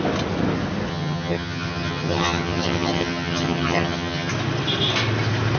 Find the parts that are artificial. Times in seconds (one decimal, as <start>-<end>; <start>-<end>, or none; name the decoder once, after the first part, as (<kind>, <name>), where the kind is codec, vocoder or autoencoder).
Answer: 0.9-4.3 (vocoder, HiFi-GAN)

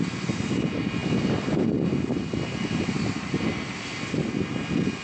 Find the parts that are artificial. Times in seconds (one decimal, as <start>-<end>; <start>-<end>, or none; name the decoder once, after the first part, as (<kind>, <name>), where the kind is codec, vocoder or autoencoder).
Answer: none

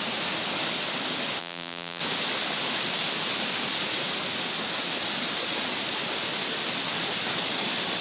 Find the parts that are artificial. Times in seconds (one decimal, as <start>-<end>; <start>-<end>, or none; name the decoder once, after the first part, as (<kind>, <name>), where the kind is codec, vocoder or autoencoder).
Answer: 1.4-2.0 (vocoder, BigVGAN v2)